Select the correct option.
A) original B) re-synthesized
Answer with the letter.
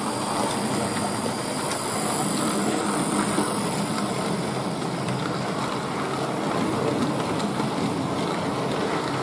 A